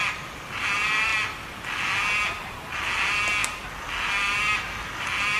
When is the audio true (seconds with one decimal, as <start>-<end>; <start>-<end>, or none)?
0.0-5.4